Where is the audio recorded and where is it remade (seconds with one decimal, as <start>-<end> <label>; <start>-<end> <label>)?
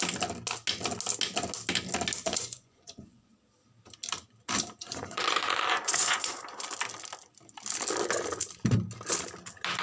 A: 0.0-2.2 recorded; 2.2-3.3 remade; 3.3-4.8 recorded; 4.8-6.4 remade; 6.4-9.8 recorded